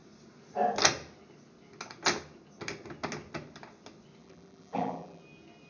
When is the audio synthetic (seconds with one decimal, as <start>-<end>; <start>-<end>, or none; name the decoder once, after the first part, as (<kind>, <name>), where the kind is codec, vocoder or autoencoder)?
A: 4.2-5.2 (vocoder, BigVGAN v2)